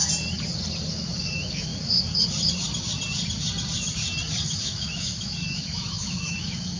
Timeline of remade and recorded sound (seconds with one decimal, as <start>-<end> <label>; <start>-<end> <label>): 0.0-0.9 recorded; 0.9-1.7 remade; 1.7-4.6 recorded; 4.6-6.8 remade